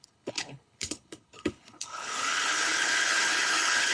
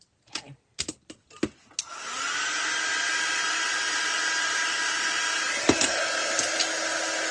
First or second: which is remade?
first